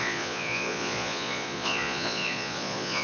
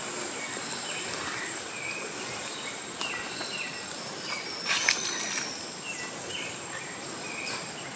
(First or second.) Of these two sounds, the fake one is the first